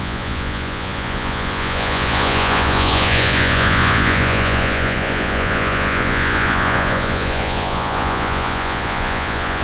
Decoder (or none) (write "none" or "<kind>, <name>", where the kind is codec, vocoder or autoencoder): vocoder, Vocos